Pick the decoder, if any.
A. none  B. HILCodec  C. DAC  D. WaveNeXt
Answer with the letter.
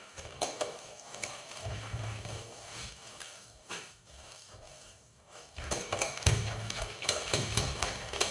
C